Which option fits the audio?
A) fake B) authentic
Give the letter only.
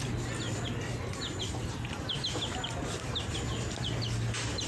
B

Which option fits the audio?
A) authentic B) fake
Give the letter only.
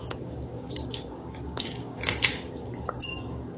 B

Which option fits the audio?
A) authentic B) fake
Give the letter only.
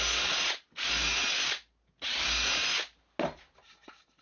A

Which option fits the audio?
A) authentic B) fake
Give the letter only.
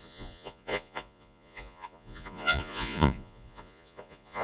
B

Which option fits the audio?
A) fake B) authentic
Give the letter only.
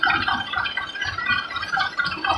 B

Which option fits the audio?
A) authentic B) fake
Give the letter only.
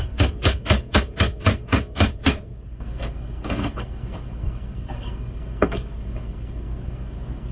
B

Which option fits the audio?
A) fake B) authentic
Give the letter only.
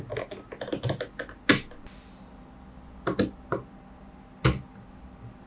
B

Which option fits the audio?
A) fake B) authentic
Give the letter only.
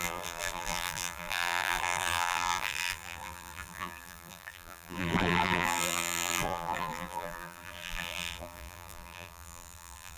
A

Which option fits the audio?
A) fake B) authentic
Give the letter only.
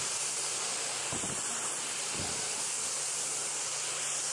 B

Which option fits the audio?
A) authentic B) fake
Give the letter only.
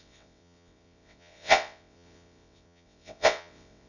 B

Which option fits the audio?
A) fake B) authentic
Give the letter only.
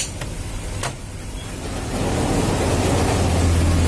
B